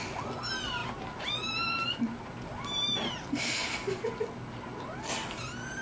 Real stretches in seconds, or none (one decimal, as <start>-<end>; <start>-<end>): 0.0-5.8